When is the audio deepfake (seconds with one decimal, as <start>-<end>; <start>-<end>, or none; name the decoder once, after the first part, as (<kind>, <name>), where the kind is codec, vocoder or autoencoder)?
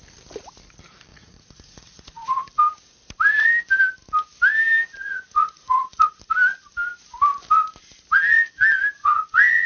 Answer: 1.1-2.4 (vocoder, Vocos); 5.0-6.2; 9.0-9.7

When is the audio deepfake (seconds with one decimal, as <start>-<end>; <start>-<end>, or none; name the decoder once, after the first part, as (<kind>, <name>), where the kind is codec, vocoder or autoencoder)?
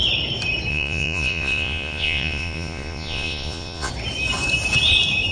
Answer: 0.7-3.9 (vocoder, Vocos)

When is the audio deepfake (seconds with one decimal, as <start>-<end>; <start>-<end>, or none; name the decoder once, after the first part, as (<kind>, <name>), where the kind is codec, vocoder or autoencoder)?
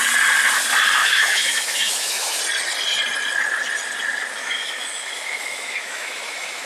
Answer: 1.0-2.4 (autoencoder, DAC-VAE); 4.4-6.7